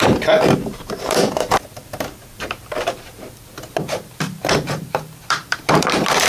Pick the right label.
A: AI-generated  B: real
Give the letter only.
A